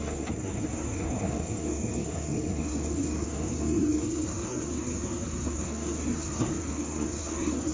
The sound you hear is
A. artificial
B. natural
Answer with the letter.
A